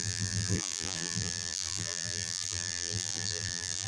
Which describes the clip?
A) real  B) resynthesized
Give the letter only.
B